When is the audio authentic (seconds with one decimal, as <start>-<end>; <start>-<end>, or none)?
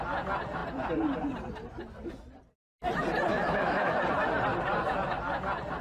0.0-3.3; 4.0-5.8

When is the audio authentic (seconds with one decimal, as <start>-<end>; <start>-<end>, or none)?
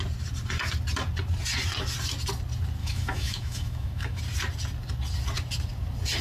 0.0-2.8; 4.2-6.2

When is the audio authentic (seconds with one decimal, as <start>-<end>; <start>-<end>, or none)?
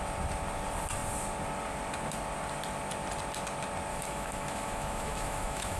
0.0-3.9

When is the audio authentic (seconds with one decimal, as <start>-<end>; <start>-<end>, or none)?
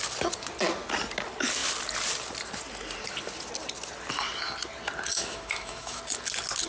0.0-5.1; 6.0-6.7